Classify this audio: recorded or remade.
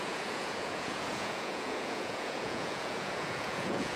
remade